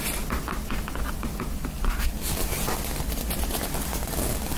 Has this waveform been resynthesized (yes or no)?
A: no